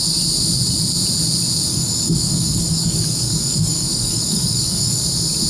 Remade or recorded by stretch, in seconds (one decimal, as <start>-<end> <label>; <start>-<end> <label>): 0.0-1.7 recorded; 1.7-5.0 remade; 5.0-5.5 recorded

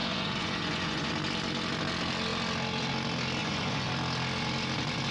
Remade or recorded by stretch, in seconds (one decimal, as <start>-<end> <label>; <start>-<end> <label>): 0.0-1.1 remade; 1.1-3.4 recorded; 3.4-3.9 remade; 3.9-5.1 recorded

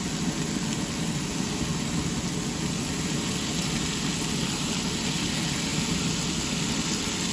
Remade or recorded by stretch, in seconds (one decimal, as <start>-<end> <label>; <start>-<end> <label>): 0.0-7.3 recorded

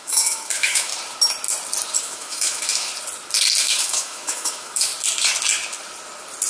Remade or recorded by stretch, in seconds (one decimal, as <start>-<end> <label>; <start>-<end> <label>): 0.0-0.9 remade; 0.9-2.0 recorded; 2.0-2.9 remade; 2.9-3.6 recorded; 3.6-4.9 remade; 4.9-6.5 recorded

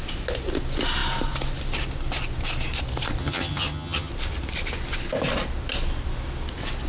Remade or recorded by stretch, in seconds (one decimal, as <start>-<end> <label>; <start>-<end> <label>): 0.0-3.2 recorded; 3.2-4.1 remade; 4.1-6.9 recorded

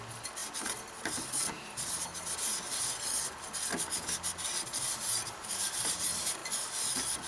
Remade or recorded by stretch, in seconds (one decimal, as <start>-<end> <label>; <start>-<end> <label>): 0.0-7.3 recorded

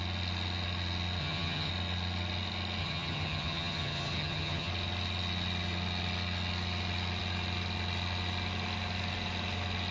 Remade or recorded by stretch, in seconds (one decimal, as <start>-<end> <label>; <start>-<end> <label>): 0.0-1.2 recorded; 1.2-1.7 remade; 1.7-2.8 recorded; 2.8-4.7 remade; 4.7-9.9 recorded